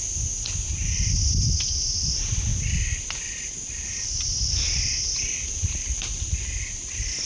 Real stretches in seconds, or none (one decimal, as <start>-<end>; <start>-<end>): 0.0-7.3